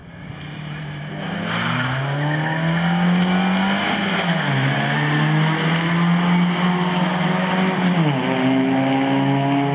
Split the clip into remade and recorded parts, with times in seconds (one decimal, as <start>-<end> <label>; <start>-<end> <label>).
0.0-1.1 remade; 1.1-9.7 recorded